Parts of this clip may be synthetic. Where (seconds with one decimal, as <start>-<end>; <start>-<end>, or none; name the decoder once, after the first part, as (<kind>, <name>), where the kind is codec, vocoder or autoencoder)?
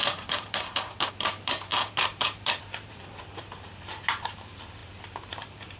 0.0-5.8 (vocoder, BigVGAN v2)